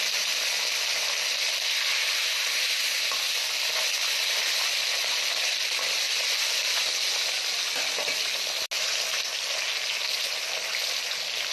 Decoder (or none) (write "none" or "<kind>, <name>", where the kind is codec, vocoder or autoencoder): none